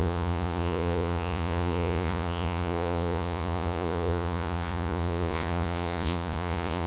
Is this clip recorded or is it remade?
remade